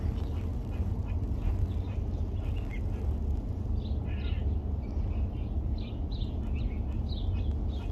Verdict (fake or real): real